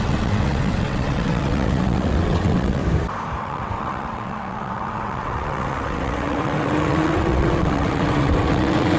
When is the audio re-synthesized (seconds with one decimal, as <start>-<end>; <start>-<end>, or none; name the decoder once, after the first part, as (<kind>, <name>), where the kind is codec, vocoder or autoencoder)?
0.0-2.8 (vocoder, WaveNeXt); 3.4-9.0